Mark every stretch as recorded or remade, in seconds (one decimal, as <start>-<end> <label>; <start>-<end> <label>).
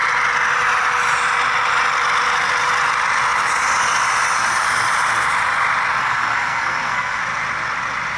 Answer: 0.0-6.0 recorded; 6.0-7.2 remade; 7.2-8.2 recorded